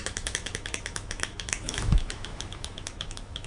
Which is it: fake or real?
fake